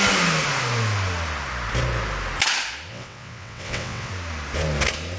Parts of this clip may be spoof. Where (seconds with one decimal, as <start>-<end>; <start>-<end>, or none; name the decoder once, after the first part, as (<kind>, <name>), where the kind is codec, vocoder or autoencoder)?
2.9-4.1 (vocoder, WaveNeXt)